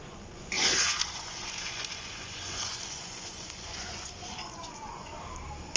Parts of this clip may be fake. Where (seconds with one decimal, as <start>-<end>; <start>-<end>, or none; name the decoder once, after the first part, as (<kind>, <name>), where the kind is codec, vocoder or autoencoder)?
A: 0.0-5.1 (vocoder, Vocos)